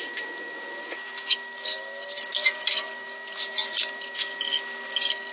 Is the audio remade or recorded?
recorded